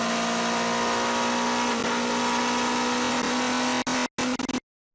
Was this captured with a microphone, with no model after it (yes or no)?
yes